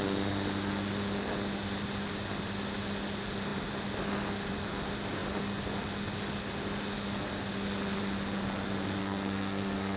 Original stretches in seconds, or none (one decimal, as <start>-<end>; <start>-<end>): 0.0-9.0